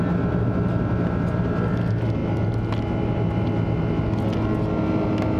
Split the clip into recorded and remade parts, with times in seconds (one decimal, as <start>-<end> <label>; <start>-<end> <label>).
0.0-5.4 recorded